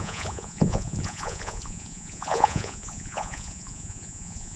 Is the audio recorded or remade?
remade